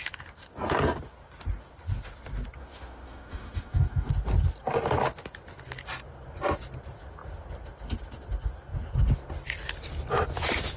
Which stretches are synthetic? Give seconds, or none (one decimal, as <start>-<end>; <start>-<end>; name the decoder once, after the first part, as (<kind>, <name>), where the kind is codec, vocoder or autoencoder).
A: 2.6-4.1 (autoencoder, DAC-VAE)